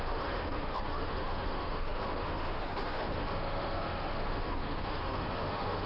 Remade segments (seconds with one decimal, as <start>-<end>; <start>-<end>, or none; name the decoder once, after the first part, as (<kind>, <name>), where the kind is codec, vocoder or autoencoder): 0.0-5.9 (autoencoder, DAC-VAE)